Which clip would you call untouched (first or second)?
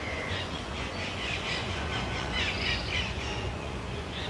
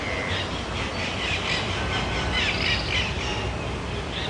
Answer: second